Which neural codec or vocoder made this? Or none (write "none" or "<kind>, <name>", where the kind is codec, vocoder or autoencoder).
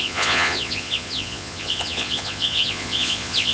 vocoder, Vocos